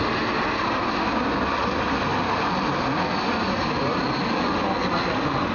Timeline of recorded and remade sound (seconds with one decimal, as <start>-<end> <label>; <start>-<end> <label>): 0.0-5.5 recorded